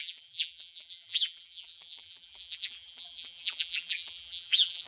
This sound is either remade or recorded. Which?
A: remade